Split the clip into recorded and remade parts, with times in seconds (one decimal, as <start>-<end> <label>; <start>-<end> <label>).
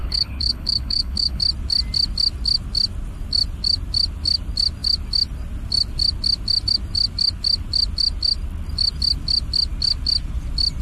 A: 0.0-1.4 remade; 1.4-10.8 recorded